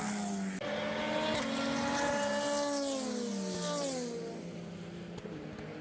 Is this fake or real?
real